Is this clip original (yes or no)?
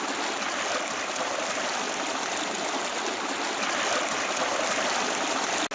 yes